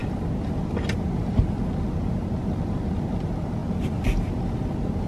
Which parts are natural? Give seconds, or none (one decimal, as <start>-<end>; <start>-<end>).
0.0-5.1